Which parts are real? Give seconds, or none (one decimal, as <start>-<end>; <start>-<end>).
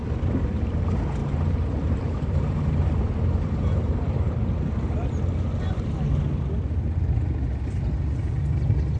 0.0-1.2; 4.3-9.0